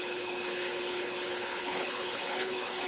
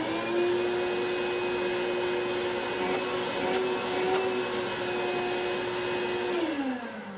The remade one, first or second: first